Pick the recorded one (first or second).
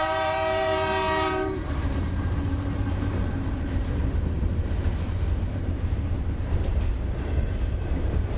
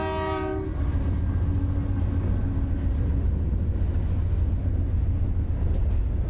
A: second